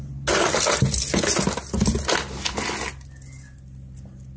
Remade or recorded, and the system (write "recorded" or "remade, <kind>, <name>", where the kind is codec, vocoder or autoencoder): recorded